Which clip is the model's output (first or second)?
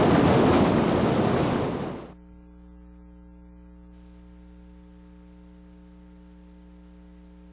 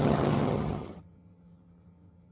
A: second